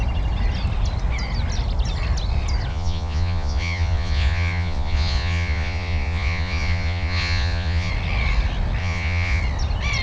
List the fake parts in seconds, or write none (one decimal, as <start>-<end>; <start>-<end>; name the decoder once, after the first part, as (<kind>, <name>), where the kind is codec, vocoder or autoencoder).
2.7-7.9 (vocoder, Vocos); 8.8-9.4